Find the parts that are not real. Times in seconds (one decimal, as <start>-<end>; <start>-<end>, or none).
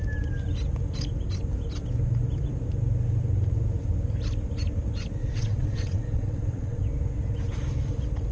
5.2-6.8